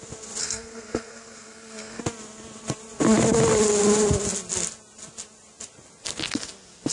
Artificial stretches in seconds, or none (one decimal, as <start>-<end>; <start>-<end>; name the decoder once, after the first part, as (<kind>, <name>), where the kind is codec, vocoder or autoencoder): 0.4-2.0 (codec, SNAC)